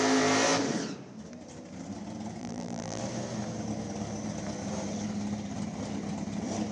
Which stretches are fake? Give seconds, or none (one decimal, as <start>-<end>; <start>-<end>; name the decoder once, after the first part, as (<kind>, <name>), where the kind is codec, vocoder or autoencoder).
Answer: 2.4-3.0 (vocoder, BigVGAN v2)

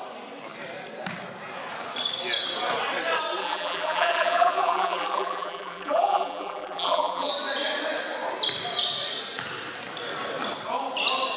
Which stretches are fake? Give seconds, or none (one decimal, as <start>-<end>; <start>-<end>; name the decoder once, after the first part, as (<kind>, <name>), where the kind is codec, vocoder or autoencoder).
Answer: 3.4-7.3 (vocoder, BigVGAN v2)